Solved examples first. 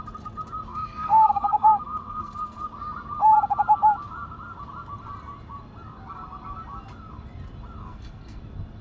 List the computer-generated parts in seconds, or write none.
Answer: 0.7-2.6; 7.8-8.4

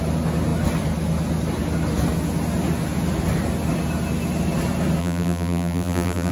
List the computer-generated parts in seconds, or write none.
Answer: 5.0-6.3

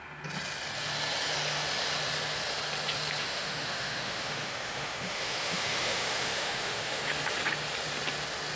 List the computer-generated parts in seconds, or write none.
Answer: 3.2-7.0

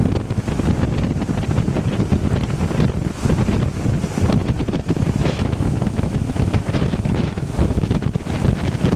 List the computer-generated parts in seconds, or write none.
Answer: 4.4-8.2

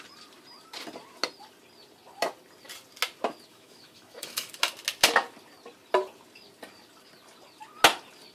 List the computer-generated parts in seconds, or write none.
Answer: 3.5-4.5

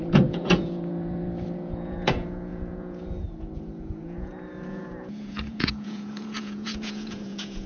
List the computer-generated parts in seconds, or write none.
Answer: 0.0-7.7

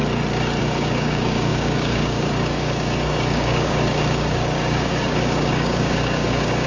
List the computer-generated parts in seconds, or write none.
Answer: 0.6-6.7

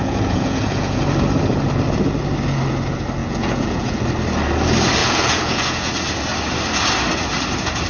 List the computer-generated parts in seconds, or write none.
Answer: 0.0-1.0; 3.2-4.0; 5.0-5.9